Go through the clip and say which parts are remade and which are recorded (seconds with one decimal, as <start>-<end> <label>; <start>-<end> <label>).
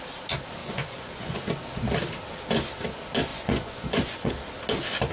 0.0-0.6 recorded; 0.6-1.4 remade; 1.4-3.3 recorded; 3.3-4.3 remade; 4.3-5.1 recorded